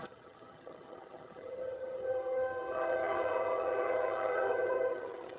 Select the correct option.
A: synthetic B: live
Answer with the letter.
A